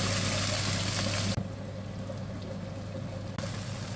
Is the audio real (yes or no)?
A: yes